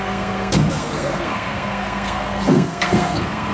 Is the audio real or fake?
fake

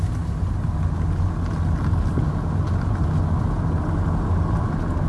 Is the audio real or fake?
real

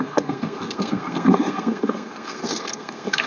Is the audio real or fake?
fake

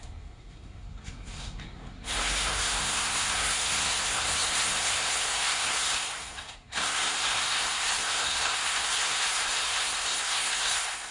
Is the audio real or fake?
fake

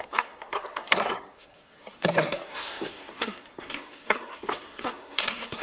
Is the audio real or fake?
fake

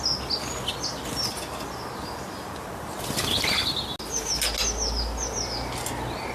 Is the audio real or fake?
real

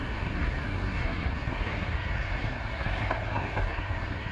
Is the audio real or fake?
fake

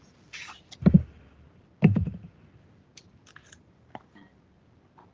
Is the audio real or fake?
real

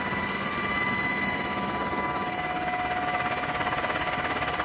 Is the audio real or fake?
real